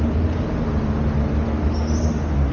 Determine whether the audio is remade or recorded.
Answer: recorded